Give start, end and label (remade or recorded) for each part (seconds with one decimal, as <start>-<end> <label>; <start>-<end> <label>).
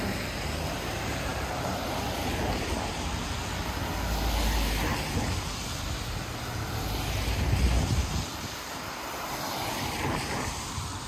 0.0-11.1 recorded